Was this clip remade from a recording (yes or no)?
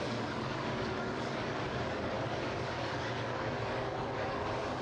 yes